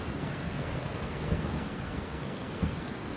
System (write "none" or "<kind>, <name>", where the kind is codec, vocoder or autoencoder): codec, SNAC